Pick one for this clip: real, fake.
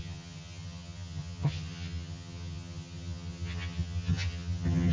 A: fake